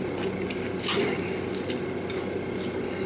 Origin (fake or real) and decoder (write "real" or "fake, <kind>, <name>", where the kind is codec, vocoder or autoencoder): real